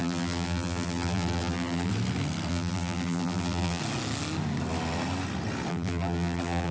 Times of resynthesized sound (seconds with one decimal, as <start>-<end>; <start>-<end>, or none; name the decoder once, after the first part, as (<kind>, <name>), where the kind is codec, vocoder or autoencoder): 0.0-1.9 (vocoder, BigVGAN v2); 2.5-3.8; 5.7-6.7